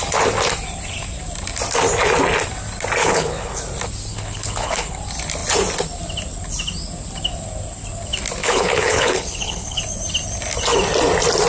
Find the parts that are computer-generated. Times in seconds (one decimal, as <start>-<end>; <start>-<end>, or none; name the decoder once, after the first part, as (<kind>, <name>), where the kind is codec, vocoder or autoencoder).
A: 3.0-3.6 (codec, HILCodec); 4.1-5.0; 8.4-9.8